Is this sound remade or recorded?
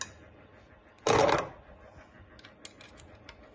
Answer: recorded